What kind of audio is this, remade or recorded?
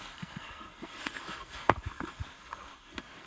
remade